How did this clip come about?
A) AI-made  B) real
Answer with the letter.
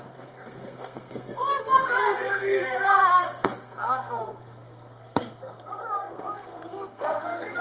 A